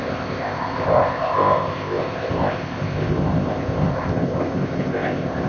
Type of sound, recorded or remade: remade